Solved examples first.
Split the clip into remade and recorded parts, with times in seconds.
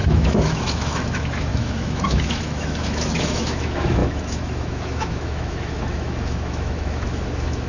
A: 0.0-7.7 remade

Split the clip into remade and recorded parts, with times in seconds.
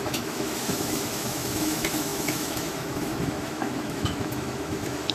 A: 0.0-5.1 remade